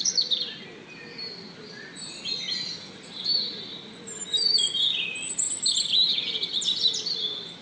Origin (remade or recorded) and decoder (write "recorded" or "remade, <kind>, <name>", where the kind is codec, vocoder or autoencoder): recorded